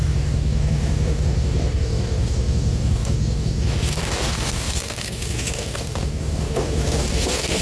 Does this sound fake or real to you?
fake